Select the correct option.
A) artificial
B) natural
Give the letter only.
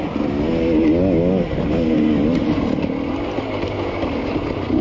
B